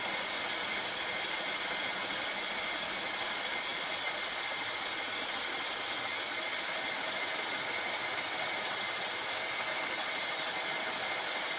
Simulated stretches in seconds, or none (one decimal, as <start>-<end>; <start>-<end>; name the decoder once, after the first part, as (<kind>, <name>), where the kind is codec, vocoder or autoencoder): none